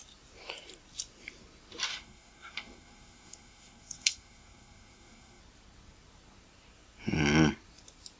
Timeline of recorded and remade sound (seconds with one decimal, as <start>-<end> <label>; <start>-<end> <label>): 0.0-1.9 recorded; 1.9-5.4 remade; 5.4-8.2 recorded